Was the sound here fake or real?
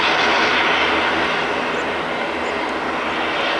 real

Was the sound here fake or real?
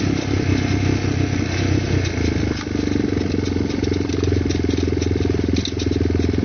real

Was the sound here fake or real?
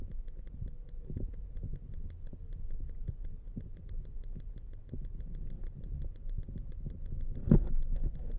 real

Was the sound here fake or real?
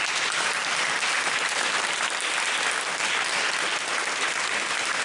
real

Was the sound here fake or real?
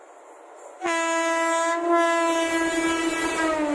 real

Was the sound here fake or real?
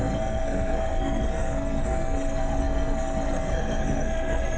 fake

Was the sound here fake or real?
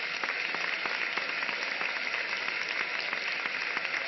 real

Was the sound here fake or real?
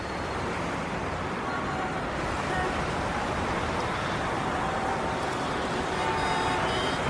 fake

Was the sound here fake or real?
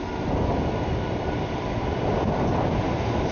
real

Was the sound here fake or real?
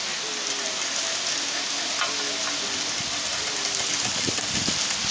real